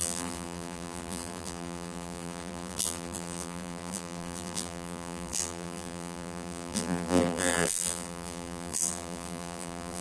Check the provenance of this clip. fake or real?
fake